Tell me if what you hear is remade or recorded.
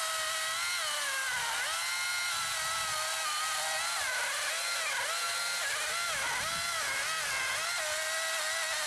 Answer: recorded